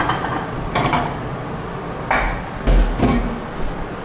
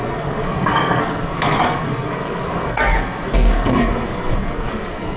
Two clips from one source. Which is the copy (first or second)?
second